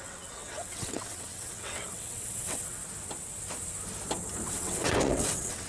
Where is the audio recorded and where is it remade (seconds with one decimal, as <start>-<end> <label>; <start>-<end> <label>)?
0.0-2.8 remade; 2.8-4.5 recorded; 4.5-5.7 remade